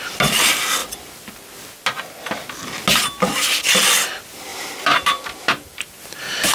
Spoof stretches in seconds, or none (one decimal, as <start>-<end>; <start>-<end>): 4.5-6.5

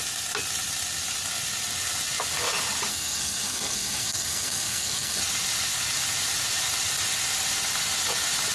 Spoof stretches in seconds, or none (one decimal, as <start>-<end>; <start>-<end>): 2.9-5.2

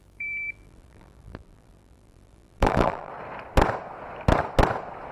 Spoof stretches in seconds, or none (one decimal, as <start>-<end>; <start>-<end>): 0.0-3.1